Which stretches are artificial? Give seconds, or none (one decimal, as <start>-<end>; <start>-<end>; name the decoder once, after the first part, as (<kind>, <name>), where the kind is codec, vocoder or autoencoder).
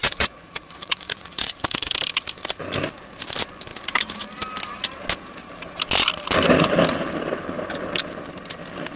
0.0-1.9 (vocoder, Vocos)